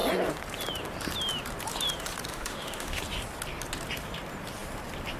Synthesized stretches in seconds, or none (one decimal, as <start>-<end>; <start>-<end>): 2.3-3.0